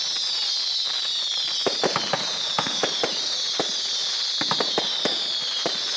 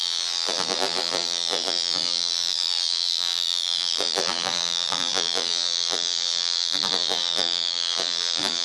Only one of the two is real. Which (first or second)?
first